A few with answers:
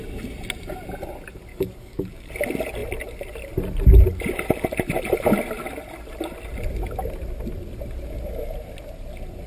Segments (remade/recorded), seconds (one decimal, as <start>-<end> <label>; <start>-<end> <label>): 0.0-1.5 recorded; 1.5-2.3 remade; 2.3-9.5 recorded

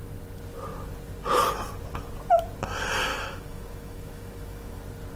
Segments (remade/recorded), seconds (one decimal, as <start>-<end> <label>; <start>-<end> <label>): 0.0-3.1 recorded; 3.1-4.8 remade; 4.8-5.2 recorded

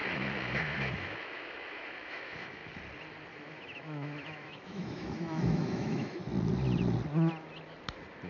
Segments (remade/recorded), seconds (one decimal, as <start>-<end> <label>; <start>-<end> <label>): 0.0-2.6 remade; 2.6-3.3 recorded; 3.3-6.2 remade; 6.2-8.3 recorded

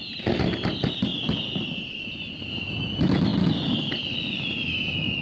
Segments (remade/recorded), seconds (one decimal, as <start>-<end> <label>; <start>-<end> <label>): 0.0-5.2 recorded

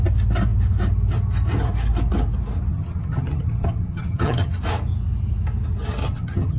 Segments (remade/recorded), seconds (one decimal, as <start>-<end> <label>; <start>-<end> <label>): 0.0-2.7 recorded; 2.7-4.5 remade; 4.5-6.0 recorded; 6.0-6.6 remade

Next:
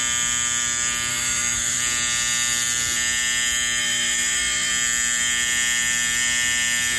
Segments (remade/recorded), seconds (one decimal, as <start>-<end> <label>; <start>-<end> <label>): 0.0-1.1 recorded; 1.1-1.8 remade; 1.8-3.8 recorded; 3.8-4.7 remade; 4.7-7.0 recorded

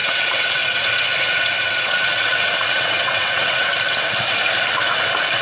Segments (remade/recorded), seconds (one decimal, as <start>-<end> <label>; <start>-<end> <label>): 0.0-3.7 remade; 3.7-5.4 recorded